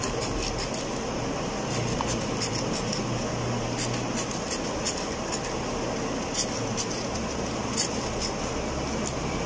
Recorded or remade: recorded